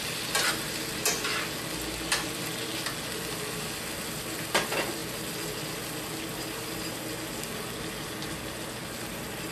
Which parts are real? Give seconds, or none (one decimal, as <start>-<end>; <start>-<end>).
0.0-9.5

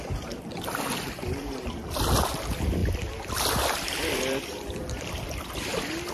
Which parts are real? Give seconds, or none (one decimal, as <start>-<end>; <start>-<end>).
0.0-2.8